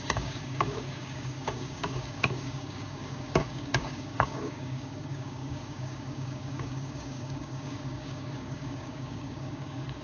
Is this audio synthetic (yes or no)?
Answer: yes